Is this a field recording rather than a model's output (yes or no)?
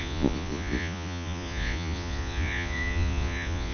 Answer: no